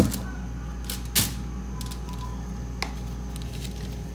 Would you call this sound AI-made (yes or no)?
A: no